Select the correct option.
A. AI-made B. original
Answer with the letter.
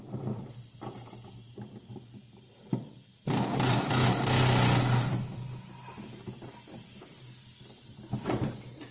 B